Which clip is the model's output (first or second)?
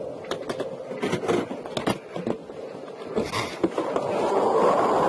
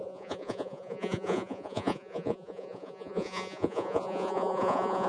second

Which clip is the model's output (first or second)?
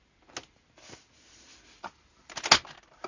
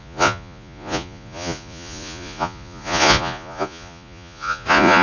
second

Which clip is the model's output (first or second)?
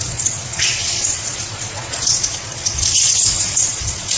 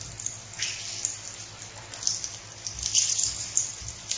first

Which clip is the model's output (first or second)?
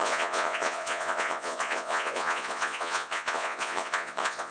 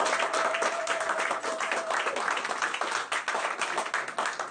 first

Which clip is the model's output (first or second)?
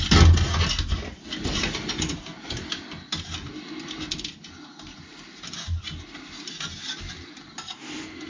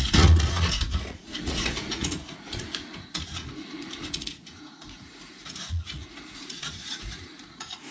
second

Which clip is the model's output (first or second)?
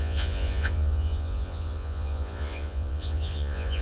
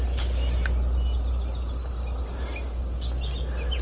first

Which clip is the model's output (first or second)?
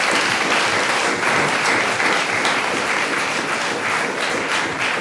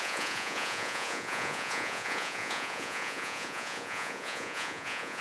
second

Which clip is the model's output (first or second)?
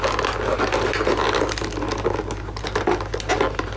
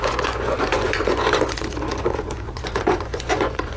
second